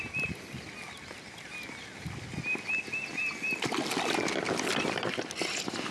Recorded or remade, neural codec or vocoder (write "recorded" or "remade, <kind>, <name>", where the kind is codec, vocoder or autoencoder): recorded